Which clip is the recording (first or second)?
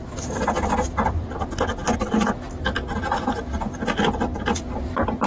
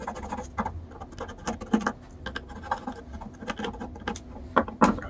second